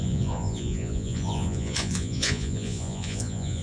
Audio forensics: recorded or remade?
remade